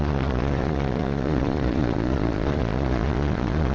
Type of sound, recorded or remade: remade